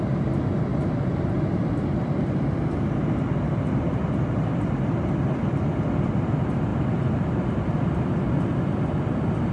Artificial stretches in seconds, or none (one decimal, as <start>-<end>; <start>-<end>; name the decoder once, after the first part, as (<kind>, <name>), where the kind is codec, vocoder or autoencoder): none